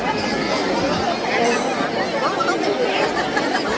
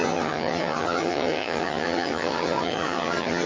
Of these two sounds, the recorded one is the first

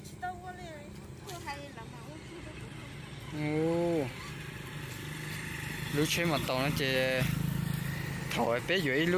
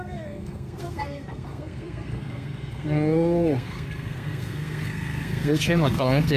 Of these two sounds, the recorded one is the first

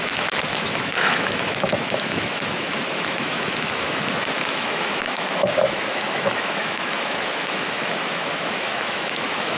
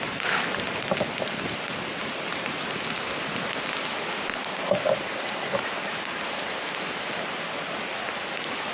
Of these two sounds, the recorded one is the second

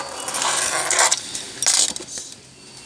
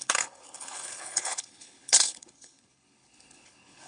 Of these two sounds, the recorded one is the first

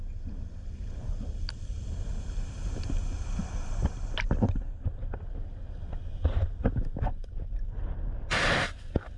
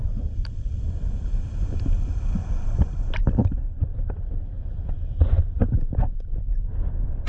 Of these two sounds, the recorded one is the first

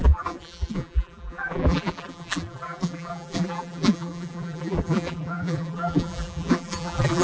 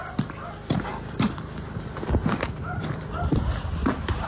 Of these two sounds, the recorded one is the second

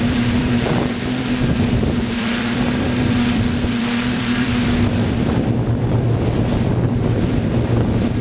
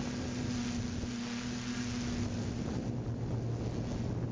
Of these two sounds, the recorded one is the second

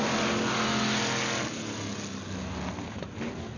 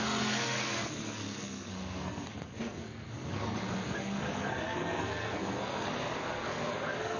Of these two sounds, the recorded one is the first